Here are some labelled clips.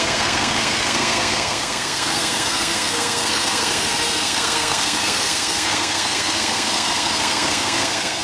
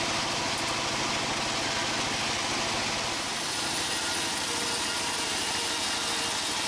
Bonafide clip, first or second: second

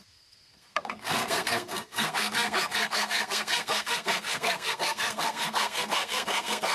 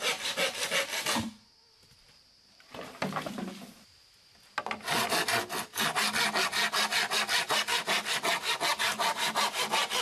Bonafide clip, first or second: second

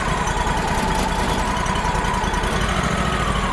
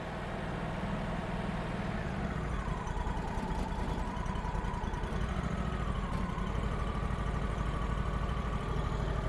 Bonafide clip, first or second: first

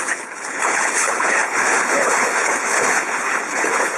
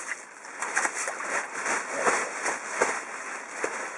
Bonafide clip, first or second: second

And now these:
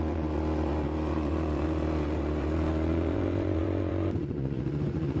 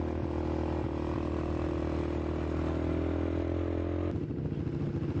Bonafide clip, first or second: second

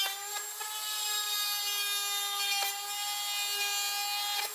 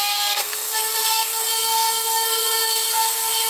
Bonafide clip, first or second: first